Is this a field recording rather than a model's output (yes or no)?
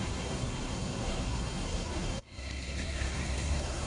no